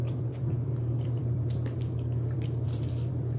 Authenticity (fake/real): fake